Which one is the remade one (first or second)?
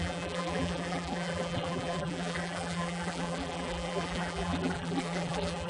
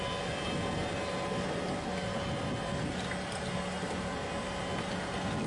first